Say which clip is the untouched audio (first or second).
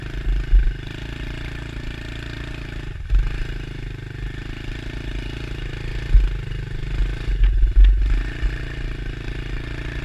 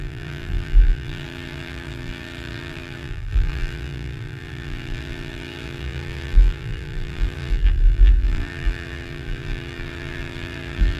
first